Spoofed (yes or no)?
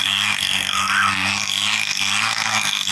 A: yes